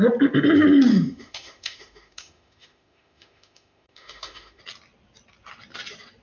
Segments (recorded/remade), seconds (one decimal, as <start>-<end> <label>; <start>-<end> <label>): 0.0-0.9 recorded; 0.9-4.6 remade; 4.6-6.2 recorded